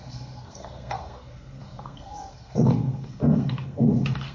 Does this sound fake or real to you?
fake